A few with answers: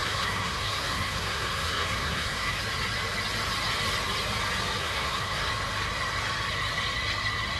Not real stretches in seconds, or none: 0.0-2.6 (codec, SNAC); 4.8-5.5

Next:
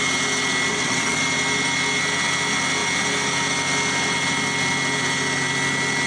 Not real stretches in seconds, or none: 0.7-1.2 (vocoder, WaveNeXt)

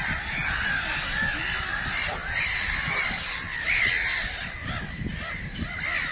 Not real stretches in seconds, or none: none

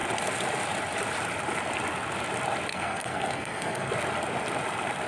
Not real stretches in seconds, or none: 2.7-3.9 (codec, SNAC)